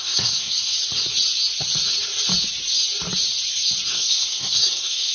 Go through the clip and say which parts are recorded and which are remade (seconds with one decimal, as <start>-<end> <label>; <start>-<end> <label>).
0.0-0.8 remade; 0.8-3.9 recorded; 3.9-5.1 remade